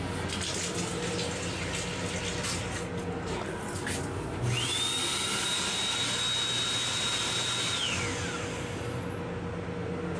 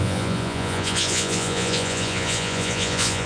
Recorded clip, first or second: first